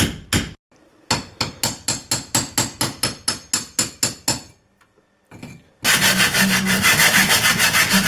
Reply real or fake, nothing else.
real